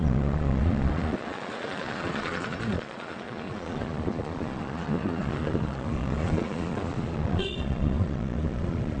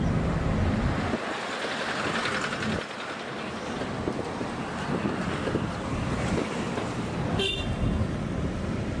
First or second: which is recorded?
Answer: second